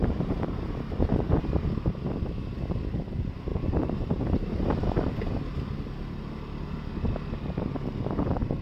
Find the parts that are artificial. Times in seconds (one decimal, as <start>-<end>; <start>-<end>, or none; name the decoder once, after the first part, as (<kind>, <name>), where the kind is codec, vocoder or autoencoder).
0.0-1.1 (vocoder, BigVGAN v2); 3.5-5.1